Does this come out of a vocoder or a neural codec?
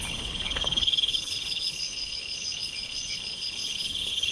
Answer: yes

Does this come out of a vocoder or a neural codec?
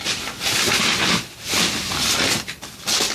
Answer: no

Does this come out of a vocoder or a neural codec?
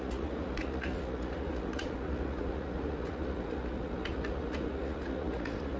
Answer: yes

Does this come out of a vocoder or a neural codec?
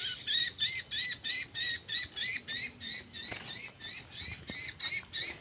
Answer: no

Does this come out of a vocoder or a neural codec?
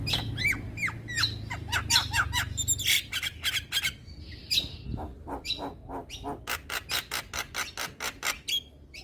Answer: no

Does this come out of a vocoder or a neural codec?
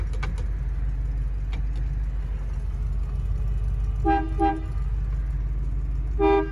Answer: no